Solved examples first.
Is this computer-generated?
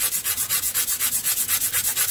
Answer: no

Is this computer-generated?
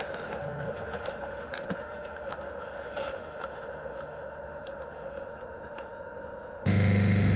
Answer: yes